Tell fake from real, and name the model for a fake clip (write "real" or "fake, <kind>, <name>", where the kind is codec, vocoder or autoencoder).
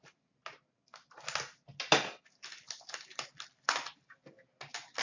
real